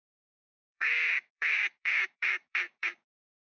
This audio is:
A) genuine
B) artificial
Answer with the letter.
B